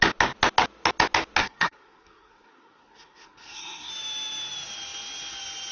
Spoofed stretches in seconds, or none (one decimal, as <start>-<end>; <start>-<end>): 1.4-3.9

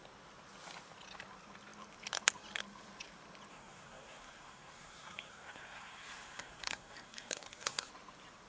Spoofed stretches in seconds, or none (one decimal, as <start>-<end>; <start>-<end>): 3.5-7.9

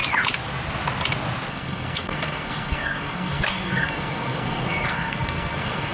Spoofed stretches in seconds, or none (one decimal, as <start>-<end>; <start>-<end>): 1.5-5.9

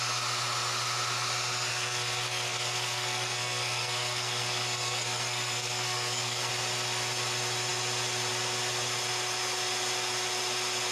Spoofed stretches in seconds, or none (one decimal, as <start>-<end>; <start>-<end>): 1.7-6.5